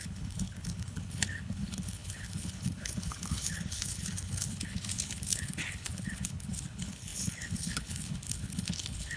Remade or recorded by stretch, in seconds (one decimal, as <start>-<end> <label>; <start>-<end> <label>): 0.0-9.2 remade